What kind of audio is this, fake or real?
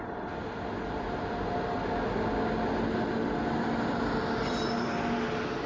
real